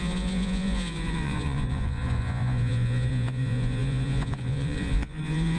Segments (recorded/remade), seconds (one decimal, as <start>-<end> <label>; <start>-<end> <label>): 0.0-5.6 remade